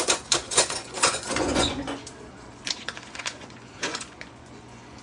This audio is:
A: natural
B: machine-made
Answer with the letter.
B